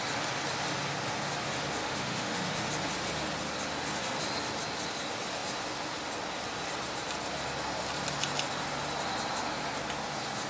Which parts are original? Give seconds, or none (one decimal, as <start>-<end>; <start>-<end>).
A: 0.0-1.8; 2.7-10.5

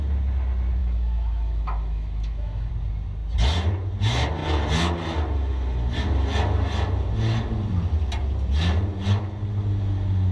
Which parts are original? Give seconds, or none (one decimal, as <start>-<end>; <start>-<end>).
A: 0.0-0.8; 2.7-10.3

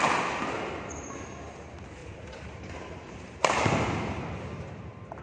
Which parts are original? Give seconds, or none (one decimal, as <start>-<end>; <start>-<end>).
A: 0.0-2.0

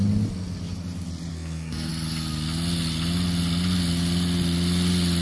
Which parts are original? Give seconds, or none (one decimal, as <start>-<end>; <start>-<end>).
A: 0.0-1.3; 1.9-5.2

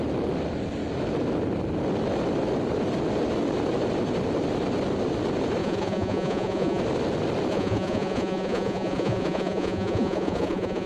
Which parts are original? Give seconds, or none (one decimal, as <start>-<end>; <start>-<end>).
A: 0.0-5.6; 6.8-7.5